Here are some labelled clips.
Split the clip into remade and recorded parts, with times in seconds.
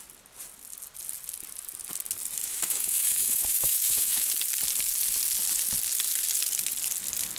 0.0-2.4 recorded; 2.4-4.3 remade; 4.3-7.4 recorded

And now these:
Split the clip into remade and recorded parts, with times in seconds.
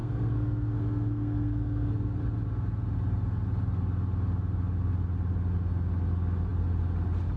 0.0-2.2 remade; 2.2-7.4 recorded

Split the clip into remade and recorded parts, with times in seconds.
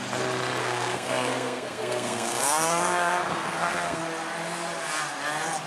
0.0-0.6 recorded; 0.6-4.0 remade; 4.0-5.7 recorded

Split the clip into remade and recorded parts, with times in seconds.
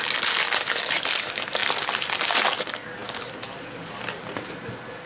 0.0-5.1 recorded